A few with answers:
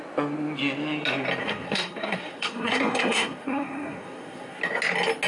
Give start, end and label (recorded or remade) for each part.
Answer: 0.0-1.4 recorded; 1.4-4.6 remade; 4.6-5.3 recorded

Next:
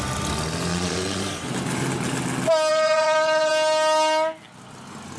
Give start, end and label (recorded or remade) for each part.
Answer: 0.0-0.7 recorded; 0.7-1.2 remade; 1.2-2.7 recorded; 2.7-3.5 remade; 3.5-5.2 recorded

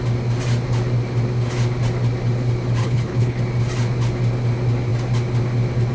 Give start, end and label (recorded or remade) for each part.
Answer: 0.0-2.8 recorded; 2.8-3.4 remade; 3.4-5.9 recorded

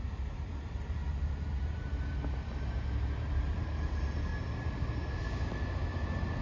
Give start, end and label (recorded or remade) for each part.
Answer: 0.0-1.0 remade; 1.0-2.7 recorded; 2.7-4.3 remade; 4.3-6.4 recorded

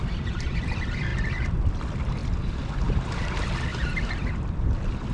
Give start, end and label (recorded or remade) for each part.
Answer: 0.0-1.1 remade; 1.1-1.7 recorded; 1.7-2.2 remade; 2.2-2.8 recorded; 2.8-5.1 remade

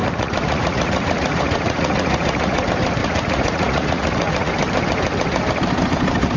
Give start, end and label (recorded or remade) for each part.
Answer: 0.0-2.6 remade; 2.6-3.0 recorded; 3.0-4.5 remade; 4.5-6.4 recorded

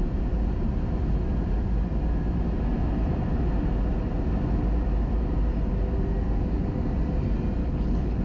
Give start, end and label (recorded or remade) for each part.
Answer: 0.0-7.6 recorded; 7.6-8.2 remade